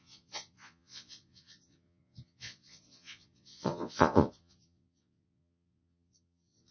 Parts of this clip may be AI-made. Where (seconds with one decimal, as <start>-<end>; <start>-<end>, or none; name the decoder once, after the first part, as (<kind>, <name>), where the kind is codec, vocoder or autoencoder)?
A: 0.0-6.7 (vocoder, Vocos)